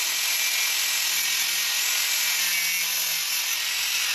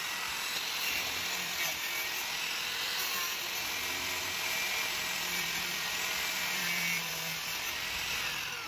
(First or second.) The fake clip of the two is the second